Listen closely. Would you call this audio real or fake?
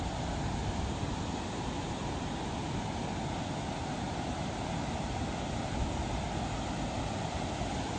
real